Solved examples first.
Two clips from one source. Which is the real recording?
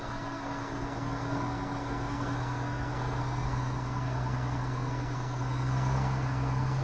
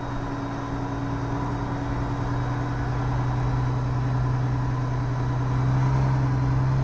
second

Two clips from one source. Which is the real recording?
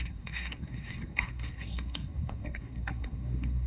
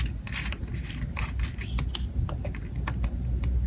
second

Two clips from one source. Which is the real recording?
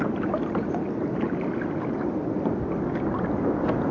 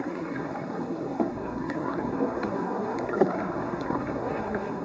first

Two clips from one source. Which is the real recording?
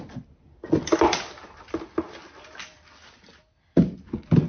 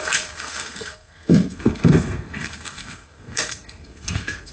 first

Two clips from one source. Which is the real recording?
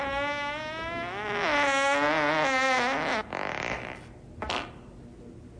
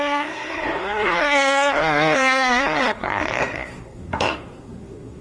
first